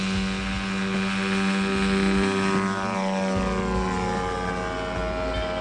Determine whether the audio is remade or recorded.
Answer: recorded